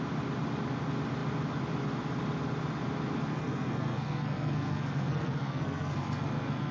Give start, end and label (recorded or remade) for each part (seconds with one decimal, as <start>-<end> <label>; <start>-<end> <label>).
0.0-3.3 recorded; 3.3-6.7 remade